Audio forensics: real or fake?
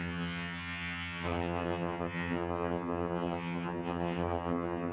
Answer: fake